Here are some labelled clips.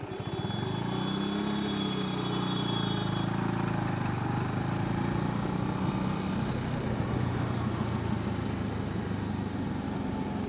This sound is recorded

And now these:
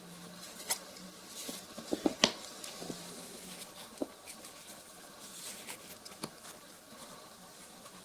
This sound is recorded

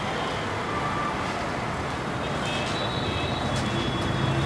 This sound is recorded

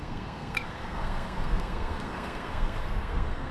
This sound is remade